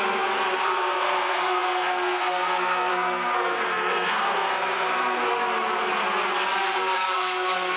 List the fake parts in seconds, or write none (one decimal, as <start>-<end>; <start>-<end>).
0.0-5.3; 6.6-7.8